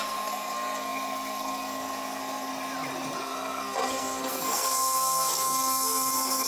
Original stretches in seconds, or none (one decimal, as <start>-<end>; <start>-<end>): 2.5-3.2